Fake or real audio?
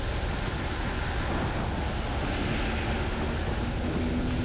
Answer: real